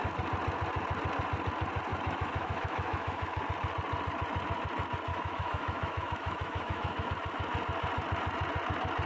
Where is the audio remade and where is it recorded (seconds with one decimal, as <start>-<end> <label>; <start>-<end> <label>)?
0.0-1.9 recorded; 1.9-3.4 remade; 3.4-5.1 recorded; 5.1-7.1 remade; 7.1-9.1 recorded

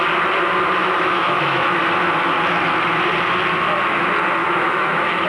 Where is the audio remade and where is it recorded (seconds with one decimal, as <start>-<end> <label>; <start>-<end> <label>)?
0.0-0.8 recorded; 0.8-1.8 remade; 1.8-4.4 recorded; 4.4-5.3 remade

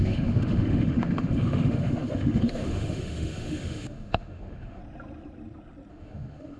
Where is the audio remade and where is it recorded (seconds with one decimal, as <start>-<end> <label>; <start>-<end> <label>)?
0.0-4.8 remade; 4.8-5.9 recorded; 5.9-6.6 remade

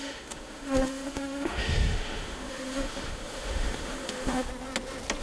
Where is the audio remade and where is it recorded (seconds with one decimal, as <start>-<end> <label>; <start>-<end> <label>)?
0.0-4.5 remade; 4.5-5.2 recorded

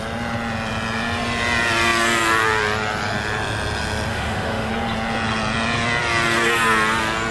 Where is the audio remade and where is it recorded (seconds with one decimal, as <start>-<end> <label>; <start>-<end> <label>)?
0.0-4.1 recorded; 4.1-4.7 remade; 4.7-7.3 recorded